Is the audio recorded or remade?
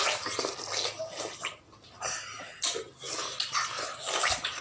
recorded